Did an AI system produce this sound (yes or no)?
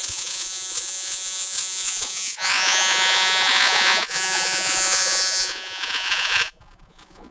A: yes